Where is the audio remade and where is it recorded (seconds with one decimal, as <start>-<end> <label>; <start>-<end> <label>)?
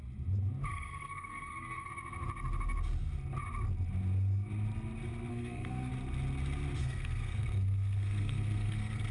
0.0-0.7 recorded; 0.7-1.9 remade; 1.9-5.3 recorded; 5.3-5.9 remade; 5.9-6.8 recorded; 6.8-9.1 remade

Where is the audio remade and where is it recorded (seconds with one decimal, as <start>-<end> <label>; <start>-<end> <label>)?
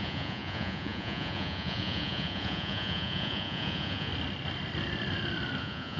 0.0-4.1 remade; 4.1-5.6 recorded; 5.6-6.0 remade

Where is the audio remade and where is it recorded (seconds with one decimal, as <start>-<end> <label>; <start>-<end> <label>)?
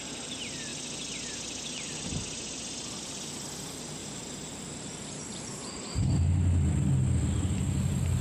0.0-4.0 recorded; 4.0-6.1 remade; 6.1-8.2 recorded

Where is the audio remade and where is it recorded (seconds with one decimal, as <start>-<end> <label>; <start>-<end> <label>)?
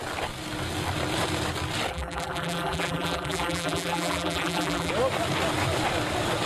0.0-1.9 recorded; 1.9-4.9 remade; 4.9-6.5 recorded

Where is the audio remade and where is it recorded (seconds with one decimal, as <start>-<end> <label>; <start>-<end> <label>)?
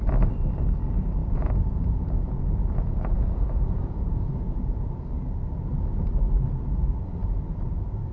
0.0-1.2 recorded; 1.2-4.9 remade; 4.9-8.1 recorded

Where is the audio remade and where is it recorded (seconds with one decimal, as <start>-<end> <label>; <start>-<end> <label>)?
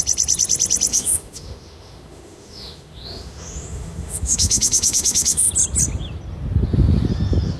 0.0-0.9 recorded; 0.9-5.5 remade; 5.5-7.6 recorded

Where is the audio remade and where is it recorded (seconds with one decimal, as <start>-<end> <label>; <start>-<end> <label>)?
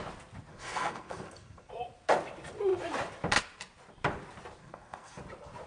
0.0-0.5 recorded; 0.5-1.7 remade; 1.7-4.6 recorded; 4.6-5.2 remade; 5.2-5.7 recorded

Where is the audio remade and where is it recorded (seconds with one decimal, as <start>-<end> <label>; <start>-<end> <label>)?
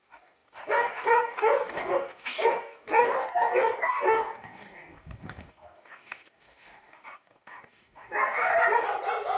0.0-8.5 remade; 8.5-9.4 recorded